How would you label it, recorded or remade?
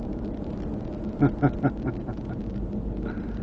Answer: recorded